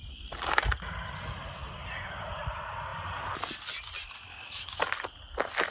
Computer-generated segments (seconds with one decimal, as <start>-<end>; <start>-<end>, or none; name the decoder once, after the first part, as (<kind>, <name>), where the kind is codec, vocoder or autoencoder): 4.3-4.8 (codec, DAC)